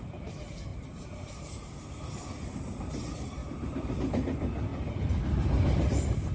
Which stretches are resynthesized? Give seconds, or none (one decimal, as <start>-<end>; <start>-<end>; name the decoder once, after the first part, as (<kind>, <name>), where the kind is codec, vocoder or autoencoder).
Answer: 0.7-1.7 (vocoder, BigVGAN v2); 3.4-4.0